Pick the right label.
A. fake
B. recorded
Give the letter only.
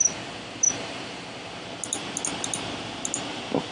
B